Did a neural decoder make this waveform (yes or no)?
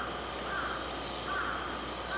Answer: no